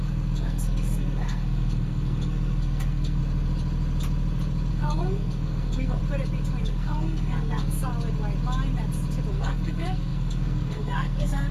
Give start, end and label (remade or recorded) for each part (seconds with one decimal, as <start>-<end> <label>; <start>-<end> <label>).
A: 0.0-3.2 remade; 3.2-4.7 recorded; 4.7-6.0 remade; 6.0-6.6 recorded; 6.6-7.9 remade; 7.9-9.3 recorded; 9.3-11.5 remade